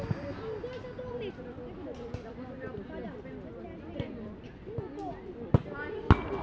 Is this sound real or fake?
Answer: real